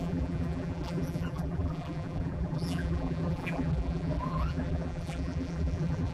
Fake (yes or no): yes